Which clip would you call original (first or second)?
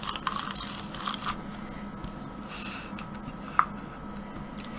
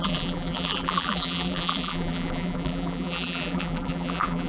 first